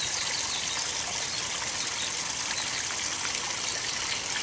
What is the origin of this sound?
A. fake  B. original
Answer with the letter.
B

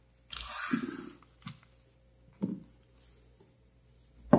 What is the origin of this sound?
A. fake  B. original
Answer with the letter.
B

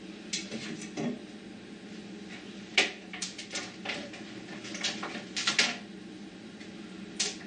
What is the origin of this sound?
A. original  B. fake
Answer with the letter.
A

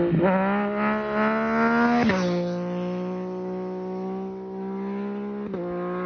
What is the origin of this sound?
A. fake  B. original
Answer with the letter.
B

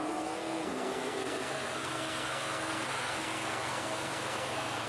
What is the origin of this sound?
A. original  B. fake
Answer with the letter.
B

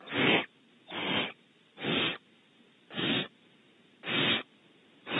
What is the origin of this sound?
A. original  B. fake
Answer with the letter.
A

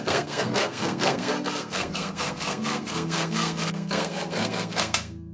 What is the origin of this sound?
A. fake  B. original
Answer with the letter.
A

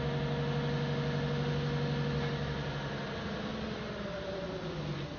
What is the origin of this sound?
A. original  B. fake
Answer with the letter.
A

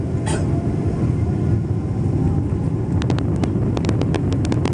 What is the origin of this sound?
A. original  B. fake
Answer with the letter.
A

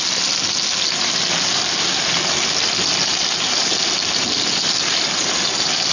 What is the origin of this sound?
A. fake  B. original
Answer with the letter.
B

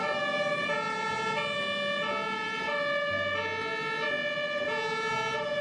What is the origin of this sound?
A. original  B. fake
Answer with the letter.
A